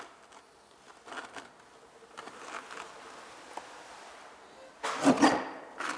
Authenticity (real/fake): real